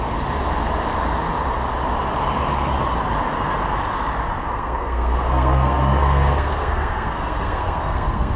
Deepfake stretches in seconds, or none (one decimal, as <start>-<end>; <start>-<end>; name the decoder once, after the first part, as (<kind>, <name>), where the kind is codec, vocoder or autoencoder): 4.5-8.4 (codec, SNAC)